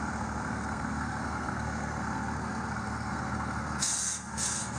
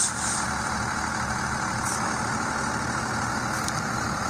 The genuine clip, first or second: second